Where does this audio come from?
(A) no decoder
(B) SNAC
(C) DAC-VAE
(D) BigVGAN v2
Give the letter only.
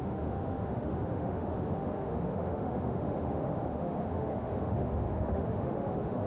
C